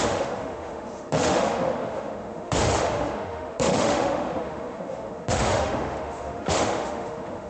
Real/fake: fake